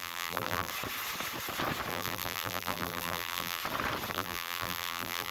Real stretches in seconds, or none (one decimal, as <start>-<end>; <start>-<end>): 0.7-1.9; 3.6-4.1